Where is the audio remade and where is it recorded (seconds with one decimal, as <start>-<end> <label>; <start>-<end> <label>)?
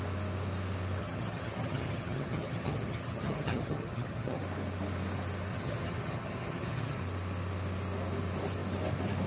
0.0-1.0 recorded; 1.0-4.4 remade; 4.4-5.5 recorded; 5.5-7.0 remade; 7.0-9.3 recorded